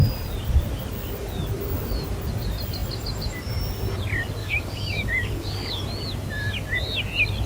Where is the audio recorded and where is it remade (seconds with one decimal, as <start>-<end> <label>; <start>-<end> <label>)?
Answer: 0.0-4.4 recorded; 4.4-5.8 remade; 5.8-7.5 recorded